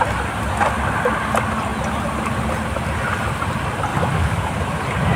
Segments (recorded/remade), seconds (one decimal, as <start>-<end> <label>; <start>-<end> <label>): 0.0-3.9 recorded; 3.9-4.5 remade; 4.5-5.2 recorded